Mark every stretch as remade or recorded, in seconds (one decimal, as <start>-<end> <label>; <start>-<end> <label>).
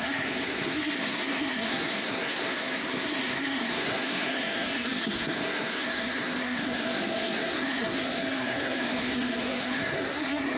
0.0-10.6 remade